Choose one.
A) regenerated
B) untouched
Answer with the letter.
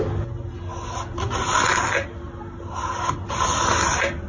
B